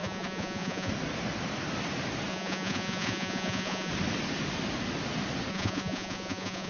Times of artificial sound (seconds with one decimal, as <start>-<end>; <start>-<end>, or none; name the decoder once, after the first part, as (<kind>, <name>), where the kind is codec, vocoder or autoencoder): 0.0-0.9 (vocoder, Vocos); 2.3-3.9; 5.5-6.7